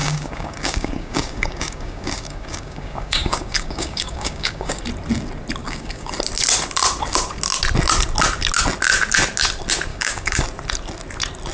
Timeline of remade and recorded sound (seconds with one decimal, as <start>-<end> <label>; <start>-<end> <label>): 0.0-4.8 remade; 4.8-5.6 recorded; 5.6-6.1 remade; 6.1-9.9 recorded; 9.9-10.4 remade; 10.4-11.5 recorded